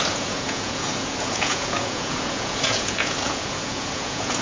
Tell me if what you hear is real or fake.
fake